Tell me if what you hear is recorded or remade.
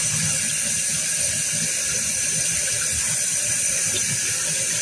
recorded